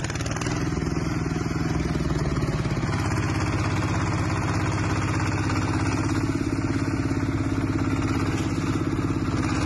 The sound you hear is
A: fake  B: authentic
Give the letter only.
B